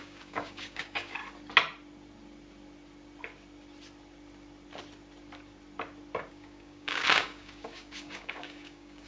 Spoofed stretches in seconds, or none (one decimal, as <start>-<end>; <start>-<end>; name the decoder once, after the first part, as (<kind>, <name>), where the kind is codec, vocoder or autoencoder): 0.0-1.2 (codec, DAC); 6.3-9.1